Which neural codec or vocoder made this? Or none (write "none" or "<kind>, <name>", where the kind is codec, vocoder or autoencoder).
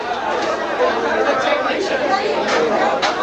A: none